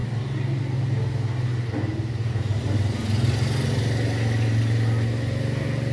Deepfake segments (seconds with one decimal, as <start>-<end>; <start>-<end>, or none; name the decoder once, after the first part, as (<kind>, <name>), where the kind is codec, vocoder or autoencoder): none